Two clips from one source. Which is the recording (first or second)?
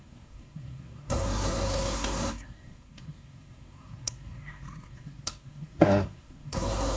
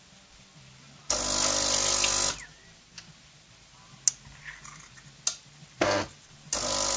second